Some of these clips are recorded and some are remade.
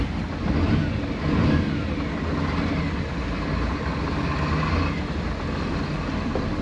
recorded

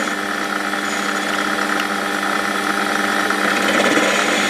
recorded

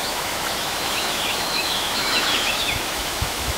remade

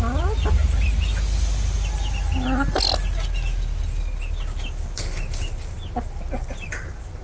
recorded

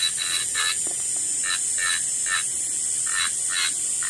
recorded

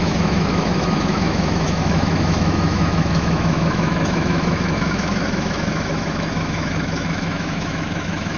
remade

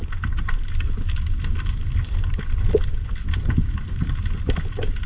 recorded